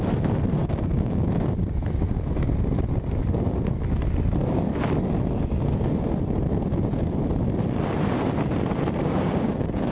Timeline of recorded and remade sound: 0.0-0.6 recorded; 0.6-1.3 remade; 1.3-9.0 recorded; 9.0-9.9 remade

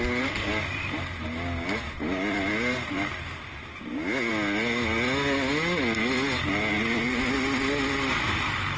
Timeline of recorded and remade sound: 0.0-8.8 recorded

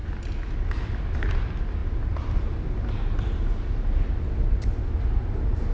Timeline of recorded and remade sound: 0.0-5.7 recorded

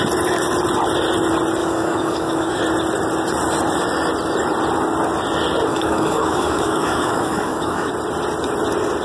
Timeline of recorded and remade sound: 0.0-1.6 recorded; 1.6-2.6 remade; 2.6-5.7 recorded; 5.7-7.9 remade; 7.9-9.0 recorded